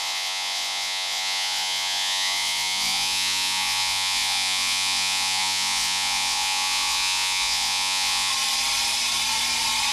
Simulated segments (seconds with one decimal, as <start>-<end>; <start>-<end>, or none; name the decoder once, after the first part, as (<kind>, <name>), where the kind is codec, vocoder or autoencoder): 0.0-8.3 (vocoder, Vocos)